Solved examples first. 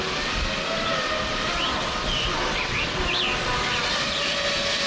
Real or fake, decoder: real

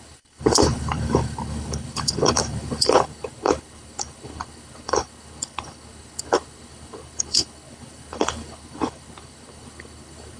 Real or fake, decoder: fake, codec, HILCodec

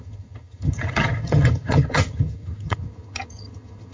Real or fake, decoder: fake, vocoder, HiFi-GAN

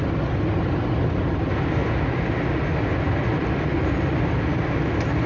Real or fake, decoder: real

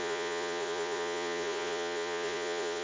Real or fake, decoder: fake, vocoder, Vocos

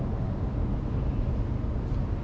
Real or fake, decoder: real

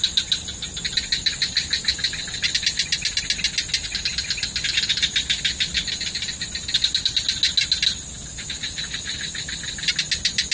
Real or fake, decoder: real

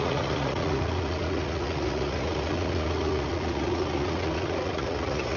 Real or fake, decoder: fake, vocoder, Vocos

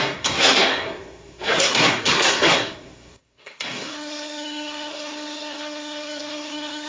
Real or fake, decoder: fake, codec, SNAC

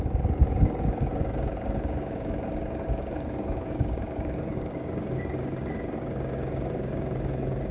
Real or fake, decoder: fake, codec, DAC